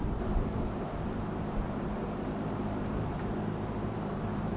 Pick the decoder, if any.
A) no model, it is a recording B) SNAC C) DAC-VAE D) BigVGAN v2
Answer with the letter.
D